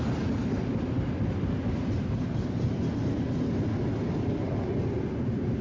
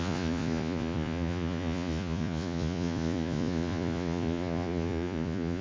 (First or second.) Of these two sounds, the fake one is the second